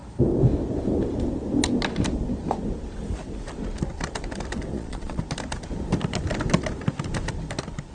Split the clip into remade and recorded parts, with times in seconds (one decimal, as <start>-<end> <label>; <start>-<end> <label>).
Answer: 0.0-4.7 recorded; 4.7-5.2 remade; 5.2-7.9 recorded